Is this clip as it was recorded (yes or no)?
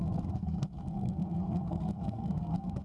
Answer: no